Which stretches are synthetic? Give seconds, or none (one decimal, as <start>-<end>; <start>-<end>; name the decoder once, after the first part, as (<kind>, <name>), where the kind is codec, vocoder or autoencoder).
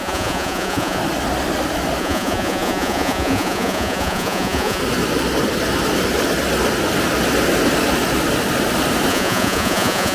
0.0-1.0 (vocoder, Vocos); 2.0-4.8; 9.1-10.1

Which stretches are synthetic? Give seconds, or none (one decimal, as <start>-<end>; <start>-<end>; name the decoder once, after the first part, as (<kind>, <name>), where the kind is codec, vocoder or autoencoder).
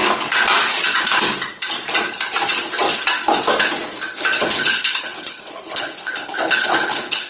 4.4-7.3 (codec, HILCodec)